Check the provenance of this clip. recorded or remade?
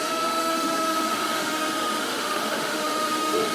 remade